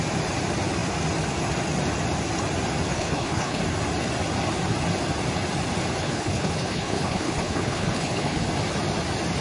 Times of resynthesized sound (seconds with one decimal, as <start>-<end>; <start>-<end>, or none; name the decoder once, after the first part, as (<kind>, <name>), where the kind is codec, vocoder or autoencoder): 2.9-3.6 (codec, HILCodec); 6.0-8.5